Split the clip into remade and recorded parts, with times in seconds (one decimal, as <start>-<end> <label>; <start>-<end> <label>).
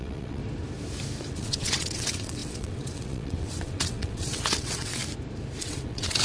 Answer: 0.0-0.4 remade; 0.4-1.3 recorded; 1.3-5.0 remade; 5.0-5.6 recorded; 5.6-6.2 remade